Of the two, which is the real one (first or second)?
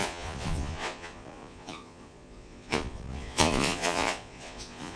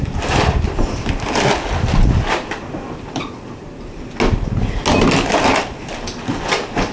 second